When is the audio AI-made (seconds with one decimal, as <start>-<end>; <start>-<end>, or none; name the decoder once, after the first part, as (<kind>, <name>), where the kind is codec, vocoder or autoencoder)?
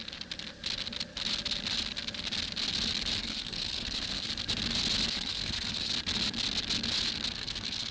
3.2-4.3 (codec, SNAC); 5.1-5.9; 7.3-7.9